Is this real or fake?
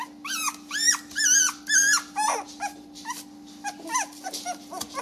real